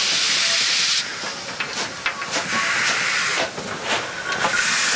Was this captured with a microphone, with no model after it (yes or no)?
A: yes